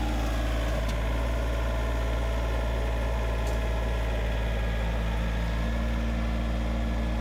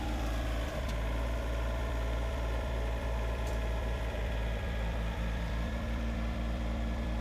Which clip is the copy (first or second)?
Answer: second